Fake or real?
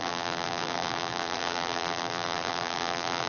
fake